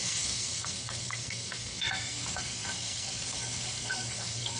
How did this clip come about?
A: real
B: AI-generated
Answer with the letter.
B